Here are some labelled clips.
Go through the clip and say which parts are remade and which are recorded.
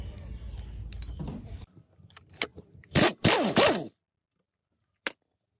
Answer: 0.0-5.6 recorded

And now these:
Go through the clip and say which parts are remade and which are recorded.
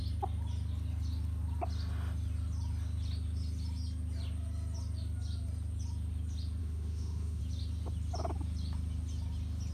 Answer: 0.0-6.6 recorded; 6.6-7.4 remade; 7.4-9.7 recorded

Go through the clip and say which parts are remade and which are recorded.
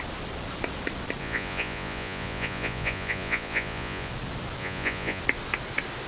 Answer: 0.0-1.2 recorded; 1.2-4.1 remade; 4.1-4.6 recorded; 4.6-5.2 remade; 5.2-6.1 recorded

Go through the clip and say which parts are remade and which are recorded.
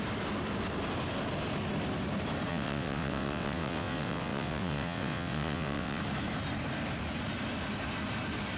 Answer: 0.0-2.5 recorded; 2.5-6.0 remade; 6.0-8.6 recorded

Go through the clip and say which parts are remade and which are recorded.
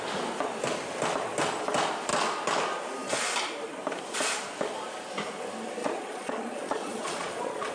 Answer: 0.0-5.8 recorded; 5.8-7.7 remade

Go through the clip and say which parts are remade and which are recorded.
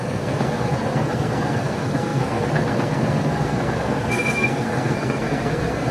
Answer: 0.0-5.9 remade